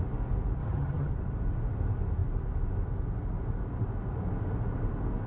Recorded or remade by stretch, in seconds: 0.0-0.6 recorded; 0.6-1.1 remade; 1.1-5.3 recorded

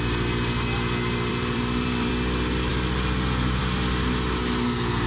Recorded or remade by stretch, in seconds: 0.0-1.3 recorded; 1.3-2.1 remade; 2.1-5.1 recorded

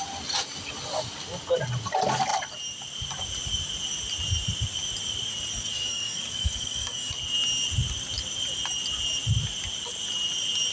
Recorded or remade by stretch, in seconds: 0.0-5.7 recorded; 5.7-7.1 remade; 7.1-10.7 recorded

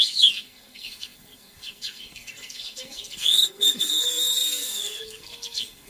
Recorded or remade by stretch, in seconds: 0.0-5.9 remade

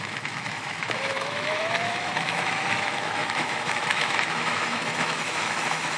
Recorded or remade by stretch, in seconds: 0.0-6.0 remade

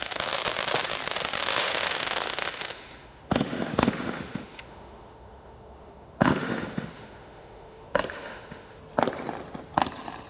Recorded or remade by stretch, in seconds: 0.0-0.4 remade; 0.4-1.4 recorded; 1.4-8.8 remade; 8.8-10.3 recorded

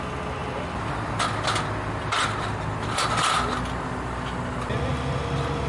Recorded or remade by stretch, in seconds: 0.0-5.7 recorded

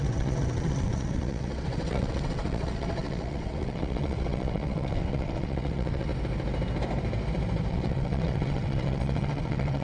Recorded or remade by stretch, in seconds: 0.0-6.1 remade; 6.1-7.7 recorded; 7.7-9.8 remade